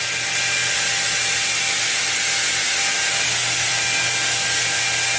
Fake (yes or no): no